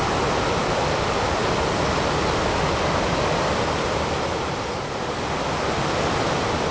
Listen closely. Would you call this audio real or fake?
real